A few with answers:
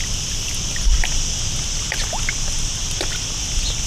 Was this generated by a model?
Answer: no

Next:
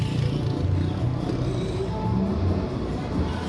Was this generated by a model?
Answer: no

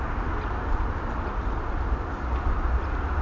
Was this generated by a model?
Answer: no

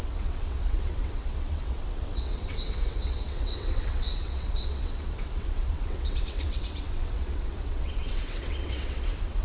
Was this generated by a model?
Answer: yes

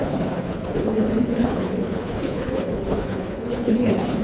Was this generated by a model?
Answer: yes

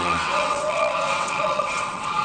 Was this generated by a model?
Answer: yes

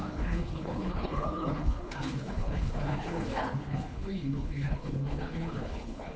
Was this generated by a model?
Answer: yes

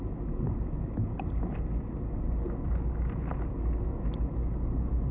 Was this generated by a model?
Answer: no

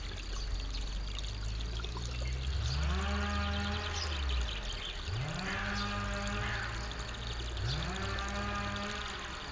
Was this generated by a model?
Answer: no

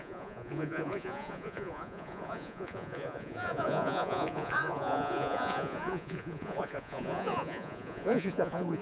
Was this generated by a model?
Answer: yes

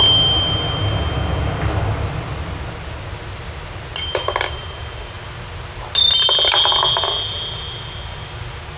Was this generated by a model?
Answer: no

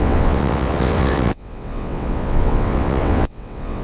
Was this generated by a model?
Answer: yes